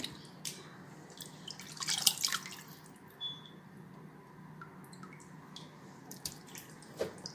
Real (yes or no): yes